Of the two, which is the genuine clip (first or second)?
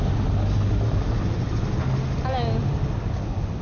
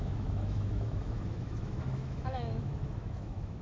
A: first